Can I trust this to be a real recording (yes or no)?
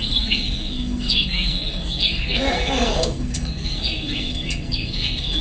no